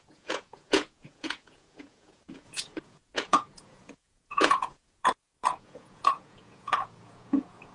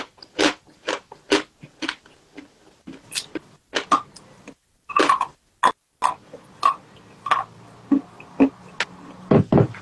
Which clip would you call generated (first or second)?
first